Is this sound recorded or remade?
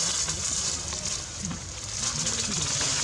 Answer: recorded